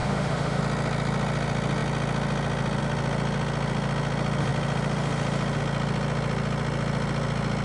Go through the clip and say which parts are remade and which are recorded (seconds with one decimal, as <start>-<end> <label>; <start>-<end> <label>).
0.0-0.6 remade; 0.6-7.6 recorded